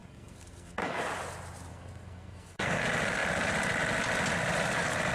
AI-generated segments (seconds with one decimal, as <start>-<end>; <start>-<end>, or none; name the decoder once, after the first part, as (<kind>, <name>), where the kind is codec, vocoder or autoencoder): 0.0-1.0 (codec, SNAC); 1.7-2.8